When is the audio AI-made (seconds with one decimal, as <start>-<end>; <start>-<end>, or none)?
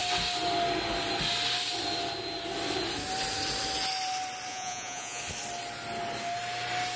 4.5-5.2